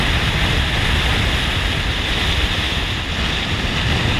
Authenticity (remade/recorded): recorded